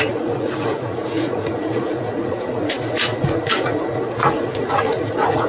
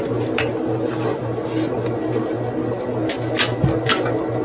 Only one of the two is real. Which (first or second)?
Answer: second